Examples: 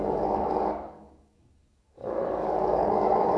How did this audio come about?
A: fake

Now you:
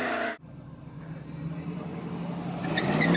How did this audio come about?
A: real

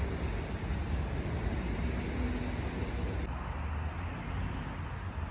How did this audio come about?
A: real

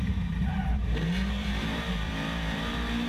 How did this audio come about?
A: fake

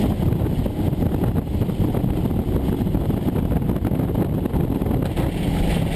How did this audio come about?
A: real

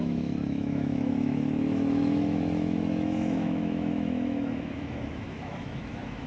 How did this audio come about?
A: fake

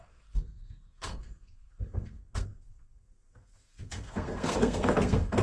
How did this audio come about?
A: fake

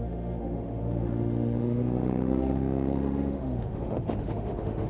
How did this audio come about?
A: fake